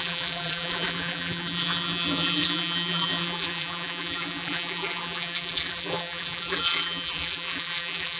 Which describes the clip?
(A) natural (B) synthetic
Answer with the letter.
B